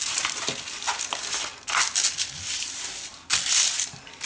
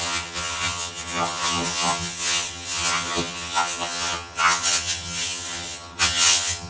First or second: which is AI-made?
second